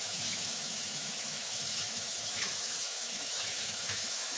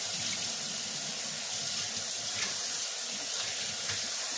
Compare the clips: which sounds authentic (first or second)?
second